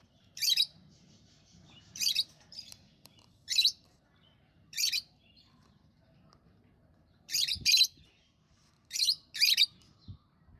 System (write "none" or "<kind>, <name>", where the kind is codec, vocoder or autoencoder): vocoder, BigVGAN v2